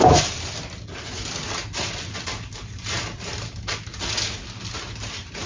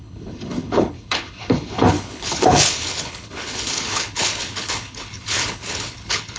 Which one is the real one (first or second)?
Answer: first